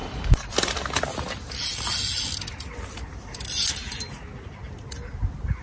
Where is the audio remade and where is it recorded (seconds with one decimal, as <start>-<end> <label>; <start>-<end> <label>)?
0.0-0.5 remade; 0.5-5.6 recorded